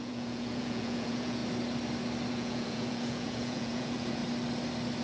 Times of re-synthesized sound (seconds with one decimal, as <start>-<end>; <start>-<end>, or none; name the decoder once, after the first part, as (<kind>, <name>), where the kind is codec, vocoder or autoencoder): 0.0-1.4 (vocoder, Vocos); 2.3-4.2